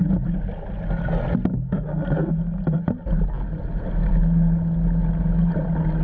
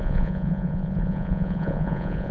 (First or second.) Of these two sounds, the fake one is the second